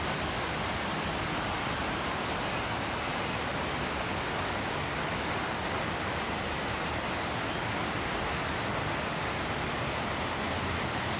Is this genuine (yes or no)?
yes